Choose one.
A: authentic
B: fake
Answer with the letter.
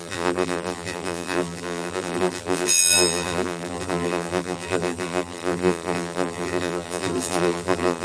B